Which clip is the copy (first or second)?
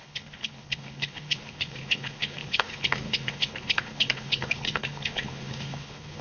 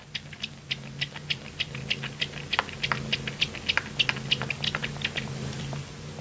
first